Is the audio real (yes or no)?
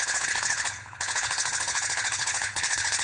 no